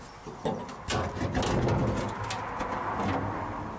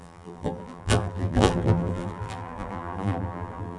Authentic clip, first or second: first